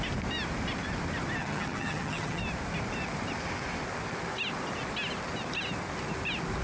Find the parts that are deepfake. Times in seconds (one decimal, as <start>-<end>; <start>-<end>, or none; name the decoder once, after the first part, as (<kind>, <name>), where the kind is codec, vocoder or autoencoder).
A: 1.4-2.4 (vocoder, HiFi-GAN)